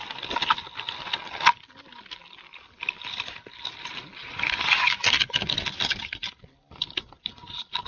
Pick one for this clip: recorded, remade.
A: recorded